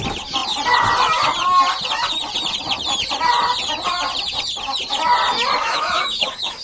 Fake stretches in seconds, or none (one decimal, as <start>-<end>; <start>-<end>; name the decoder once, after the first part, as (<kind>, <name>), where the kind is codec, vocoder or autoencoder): 5.6-6.6 (autoencoder, DAC-VAE)